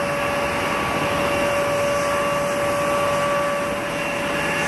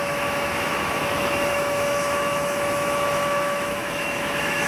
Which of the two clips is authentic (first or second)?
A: first